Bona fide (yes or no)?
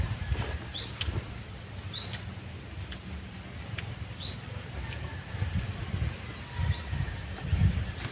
yes